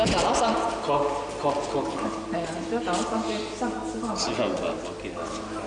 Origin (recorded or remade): recorded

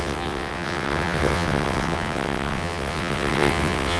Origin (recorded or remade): remade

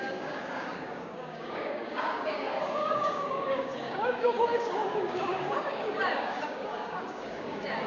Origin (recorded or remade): remade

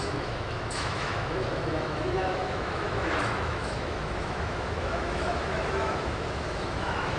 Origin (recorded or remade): remade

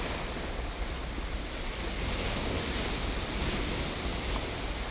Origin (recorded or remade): recorded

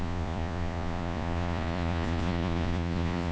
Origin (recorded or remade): remade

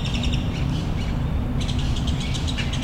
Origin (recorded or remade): recorded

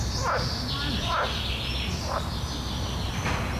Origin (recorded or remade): recorded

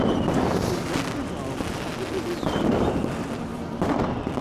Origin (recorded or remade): remade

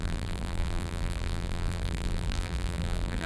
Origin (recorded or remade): remade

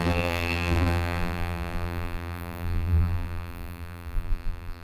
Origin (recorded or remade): remade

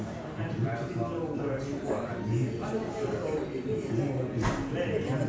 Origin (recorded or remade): recorded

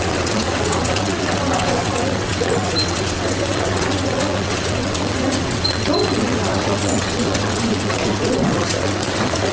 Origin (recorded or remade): remade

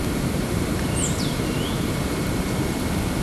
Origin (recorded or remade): remade